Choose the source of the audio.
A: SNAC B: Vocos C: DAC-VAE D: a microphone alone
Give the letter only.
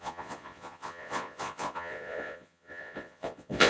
B